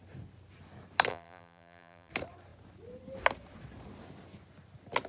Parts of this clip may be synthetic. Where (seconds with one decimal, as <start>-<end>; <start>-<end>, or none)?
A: 1.1-2.1